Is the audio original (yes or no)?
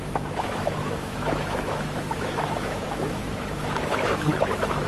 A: no